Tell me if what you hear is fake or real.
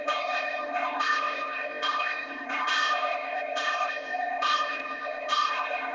fake